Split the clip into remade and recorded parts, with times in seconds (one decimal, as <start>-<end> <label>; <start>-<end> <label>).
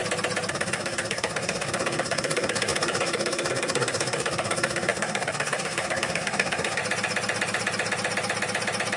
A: 0.0-0.5 recorded; 0.5-6.8 remade; 6.8-9.0 recorded